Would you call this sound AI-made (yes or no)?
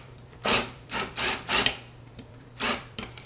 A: yes